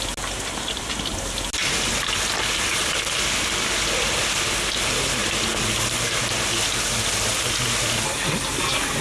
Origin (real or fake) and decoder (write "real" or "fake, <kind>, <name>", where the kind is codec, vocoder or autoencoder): real